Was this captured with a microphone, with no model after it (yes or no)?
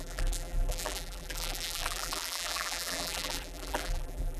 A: no